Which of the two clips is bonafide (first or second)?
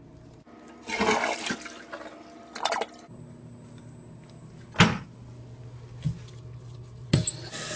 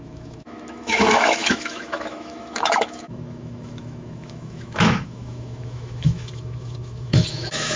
first